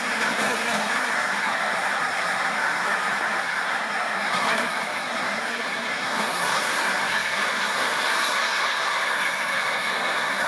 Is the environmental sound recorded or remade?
remade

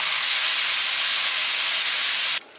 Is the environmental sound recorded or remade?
recorded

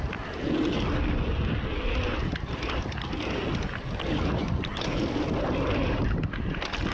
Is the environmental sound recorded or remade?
recorded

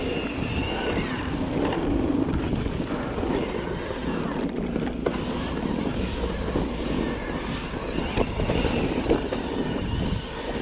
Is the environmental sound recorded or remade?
recorded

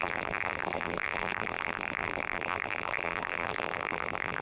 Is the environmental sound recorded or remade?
remade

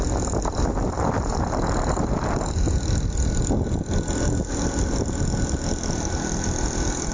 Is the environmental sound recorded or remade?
recorded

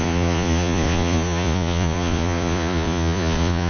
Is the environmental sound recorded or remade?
remade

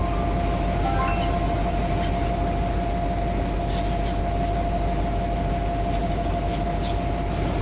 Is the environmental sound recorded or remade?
recorded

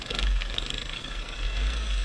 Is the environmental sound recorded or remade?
remade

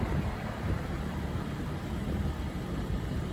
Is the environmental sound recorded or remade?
remade